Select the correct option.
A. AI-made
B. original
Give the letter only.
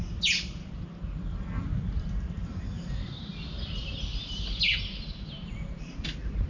B